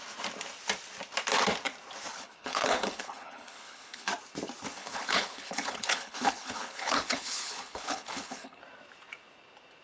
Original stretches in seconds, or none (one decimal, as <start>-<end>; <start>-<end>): 0.0-2.1; 4.1-4.8; 8.6-9.8